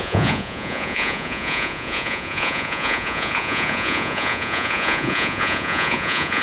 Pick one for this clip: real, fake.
fake